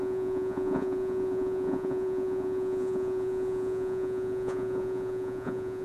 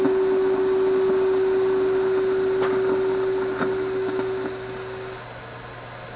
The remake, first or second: first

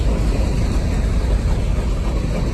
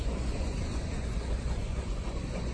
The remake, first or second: second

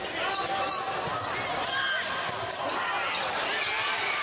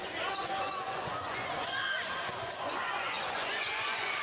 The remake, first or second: second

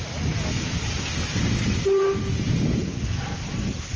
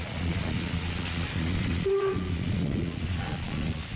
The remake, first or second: second